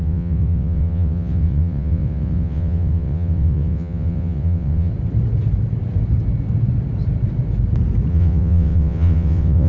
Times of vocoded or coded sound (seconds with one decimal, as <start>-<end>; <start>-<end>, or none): 0.0-4.9; 8.1-9.7